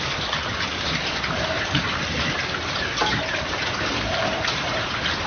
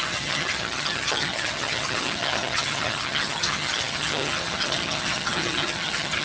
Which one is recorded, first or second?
first